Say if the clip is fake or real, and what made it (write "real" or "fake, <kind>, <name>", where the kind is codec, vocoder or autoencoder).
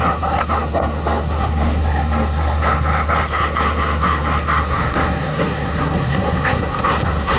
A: fake, codec, SNAC